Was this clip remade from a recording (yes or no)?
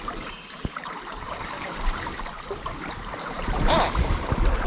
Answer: yes